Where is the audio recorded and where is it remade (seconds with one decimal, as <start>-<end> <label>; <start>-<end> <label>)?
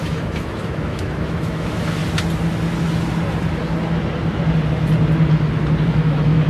0.0-2.0 remade; 2.0-5.9 recorded; 5.9-6.5 remade